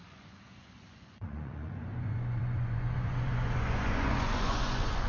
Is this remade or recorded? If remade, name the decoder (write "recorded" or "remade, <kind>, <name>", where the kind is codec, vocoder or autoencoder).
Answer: remade, vocoder, Vocos